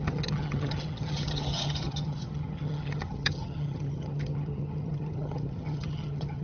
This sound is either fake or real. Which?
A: fake